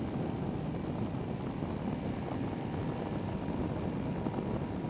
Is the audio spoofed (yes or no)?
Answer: no